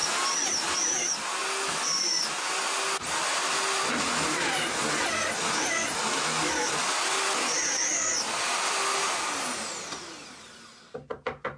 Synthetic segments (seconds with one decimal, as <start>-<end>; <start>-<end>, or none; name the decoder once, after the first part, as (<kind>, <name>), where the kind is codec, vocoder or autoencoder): none